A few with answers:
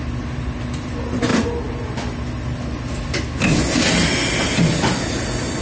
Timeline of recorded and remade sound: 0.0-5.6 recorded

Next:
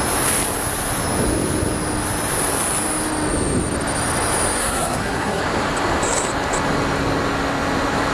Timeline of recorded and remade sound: 0.0-4.6 recorded; 4.6-5.4 remade; 5.4-8.1 recorded

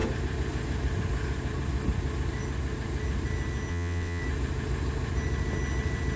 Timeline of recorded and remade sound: 0.0-3.7 recorded; 3.7-4.2 remade; 4.2-6.2 recorded

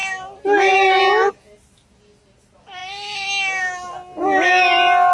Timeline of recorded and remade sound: 0.0-5.1 recorded

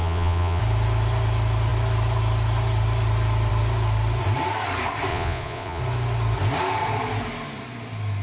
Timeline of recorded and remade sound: 0.0-0.6 remade; 0.6-5.1 recorded; 5.1-5.8 remade; 5.8-8.2 recorded

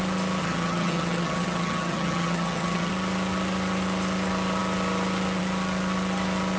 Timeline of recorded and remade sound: 0.0-0.4 recorded; 0.4-2.9 remade; 2.9-6.6 recorded

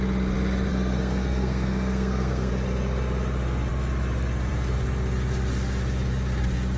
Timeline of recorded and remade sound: 0.0-0.7 recorded; 0.7-2.5 remade; 2.5-6.8 recorded

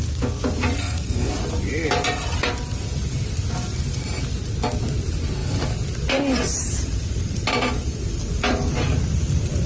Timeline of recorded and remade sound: 0.0-0.8 recorded; 0.8-1.3 remade; 1.3-9.7 recorded